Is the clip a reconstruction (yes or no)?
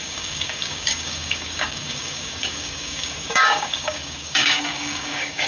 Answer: yes